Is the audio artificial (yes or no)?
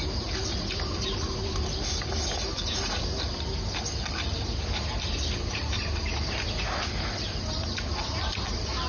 no